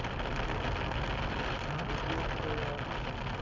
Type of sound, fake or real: real